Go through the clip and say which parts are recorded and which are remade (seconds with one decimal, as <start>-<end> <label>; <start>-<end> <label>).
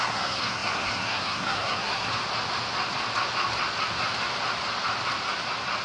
0.0-2.1 remade; 2.1-5.8 recorded